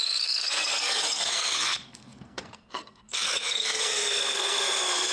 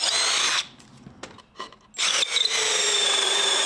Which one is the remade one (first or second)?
first